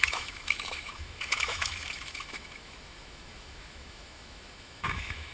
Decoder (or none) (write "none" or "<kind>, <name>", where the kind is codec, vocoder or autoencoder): autoencoder, DAC-VAE